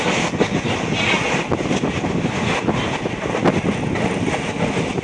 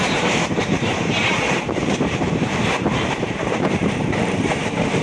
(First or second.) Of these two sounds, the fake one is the second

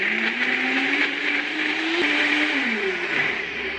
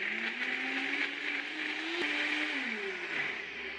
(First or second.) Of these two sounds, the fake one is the first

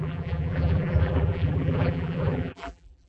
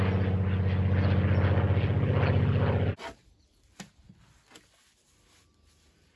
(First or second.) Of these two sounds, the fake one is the first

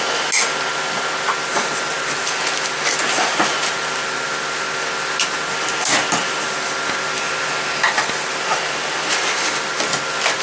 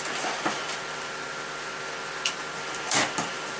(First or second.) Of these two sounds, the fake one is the second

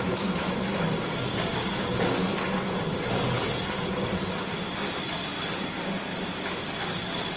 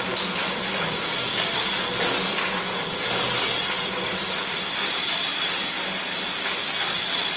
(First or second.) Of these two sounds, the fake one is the first